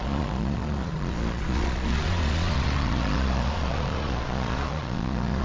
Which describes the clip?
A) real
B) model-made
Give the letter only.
B